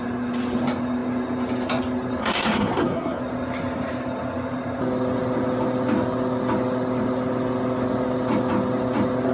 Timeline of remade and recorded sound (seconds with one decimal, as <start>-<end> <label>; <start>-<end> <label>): 0.0-2.2 recorded; 2.2-3.2 remade; 3.2-9.3 recorded